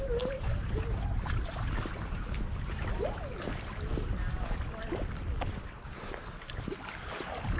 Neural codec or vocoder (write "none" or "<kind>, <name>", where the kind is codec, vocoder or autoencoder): none